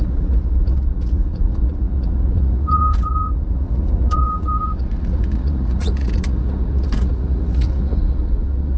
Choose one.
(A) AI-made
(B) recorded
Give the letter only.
A